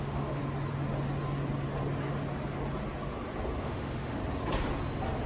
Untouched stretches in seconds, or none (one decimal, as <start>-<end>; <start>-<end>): 0.4-3.6; 4.2-5.3